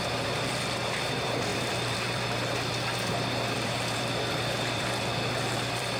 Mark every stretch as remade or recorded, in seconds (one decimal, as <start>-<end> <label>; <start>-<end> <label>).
0.0-6.0 remade